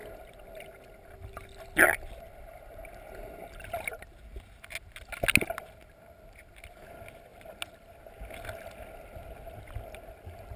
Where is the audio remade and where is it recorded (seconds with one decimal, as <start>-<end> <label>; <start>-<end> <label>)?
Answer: 0.0-10.6 recorded